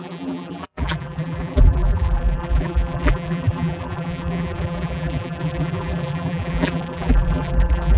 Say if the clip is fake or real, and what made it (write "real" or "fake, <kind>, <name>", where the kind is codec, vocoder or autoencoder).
fake, vocoder, BigVGAN v2